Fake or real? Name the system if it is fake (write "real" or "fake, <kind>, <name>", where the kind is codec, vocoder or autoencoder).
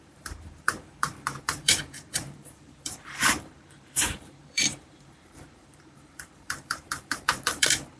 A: fake, vocoder, BigVGAN v2